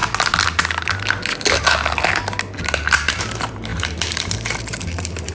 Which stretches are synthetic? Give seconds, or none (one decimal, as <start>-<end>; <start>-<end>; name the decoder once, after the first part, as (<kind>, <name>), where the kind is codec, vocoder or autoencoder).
3.2-5.3 (vocoder, BigVGAN v2)